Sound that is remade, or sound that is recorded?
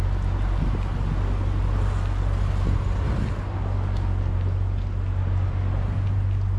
recorded